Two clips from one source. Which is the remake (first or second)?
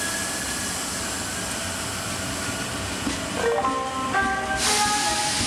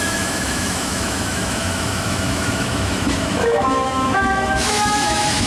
second